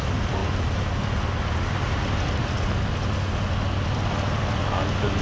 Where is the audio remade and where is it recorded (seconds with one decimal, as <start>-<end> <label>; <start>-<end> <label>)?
0.0-5.2 recorded